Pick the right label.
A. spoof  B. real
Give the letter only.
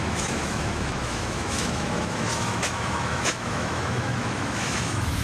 A